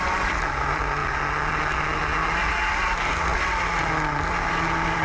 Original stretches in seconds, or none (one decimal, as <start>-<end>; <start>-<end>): 0.0-5.0

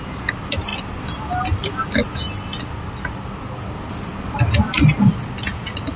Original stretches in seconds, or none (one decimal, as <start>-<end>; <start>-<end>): 0.0-5.5

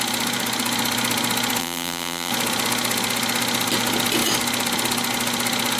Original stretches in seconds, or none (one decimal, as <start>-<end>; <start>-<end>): 0.0-1.6; 2.3-5.8